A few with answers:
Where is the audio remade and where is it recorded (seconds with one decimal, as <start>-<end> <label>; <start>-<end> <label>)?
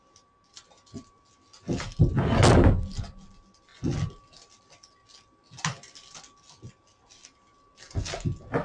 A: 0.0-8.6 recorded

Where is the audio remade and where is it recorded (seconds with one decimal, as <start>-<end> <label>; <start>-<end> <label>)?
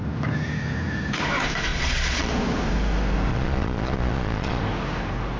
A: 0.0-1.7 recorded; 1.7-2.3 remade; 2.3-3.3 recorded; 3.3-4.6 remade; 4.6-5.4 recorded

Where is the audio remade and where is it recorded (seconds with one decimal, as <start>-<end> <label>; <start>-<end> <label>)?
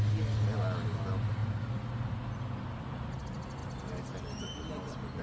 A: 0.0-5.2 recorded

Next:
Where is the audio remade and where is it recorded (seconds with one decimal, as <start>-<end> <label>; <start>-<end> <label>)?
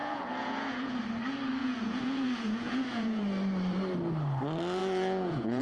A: 0.0-1.0 remade; 1.0-1.6 recorded; 1.6-3.2 remade; 3.2-4.8 recorded; 4.8-5.6 remade